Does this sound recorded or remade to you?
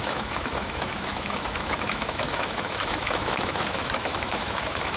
remade